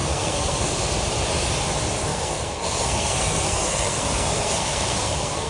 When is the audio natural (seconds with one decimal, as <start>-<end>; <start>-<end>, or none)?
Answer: 0.7-2.1